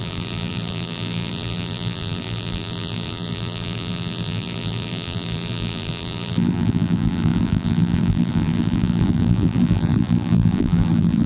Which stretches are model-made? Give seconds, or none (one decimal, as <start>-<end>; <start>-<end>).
0.0-11.3